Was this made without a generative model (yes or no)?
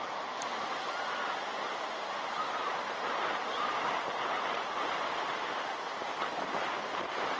no